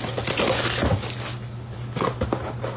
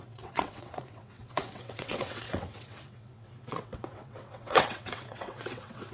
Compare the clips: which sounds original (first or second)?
first